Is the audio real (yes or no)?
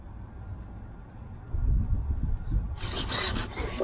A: yes